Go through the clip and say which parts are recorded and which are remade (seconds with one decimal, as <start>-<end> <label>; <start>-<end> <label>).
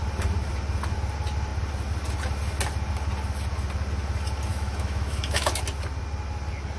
0.0-4.5 recorded; 4.5-5.6 remade; 5.6-6.8 recorded